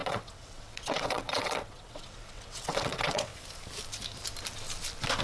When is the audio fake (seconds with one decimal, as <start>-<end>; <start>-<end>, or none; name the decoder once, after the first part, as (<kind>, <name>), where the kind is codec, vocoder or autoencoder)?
0.0-3.3 (vocoder, WaveNeXt)